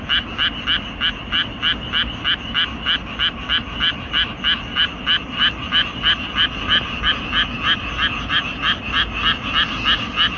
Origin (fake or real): real